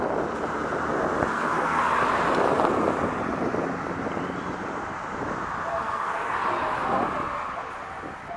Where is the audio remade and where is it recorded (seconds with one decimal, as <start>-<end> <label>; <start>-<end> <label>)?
0.0-1.3 recorded; 1.3-1.8 remade; 1.8-5.7 recorded; 5.7-6.4 remade; 6.4-8.4 recorded